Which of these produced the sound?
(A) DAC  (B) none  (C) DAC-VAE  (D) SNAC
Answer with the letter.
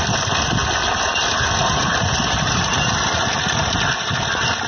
B